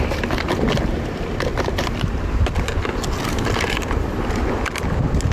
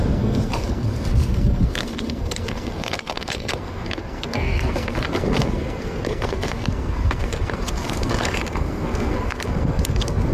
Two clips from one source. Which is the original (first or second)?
first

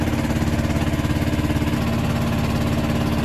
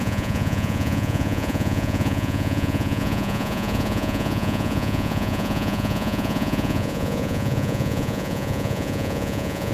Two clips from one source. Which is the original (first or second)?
first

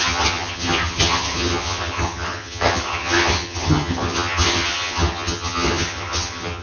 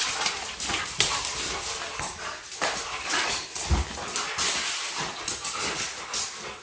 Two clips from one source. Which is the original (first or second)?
second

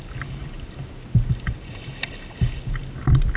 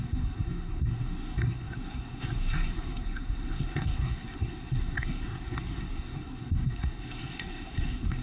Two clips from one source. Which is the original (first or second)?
first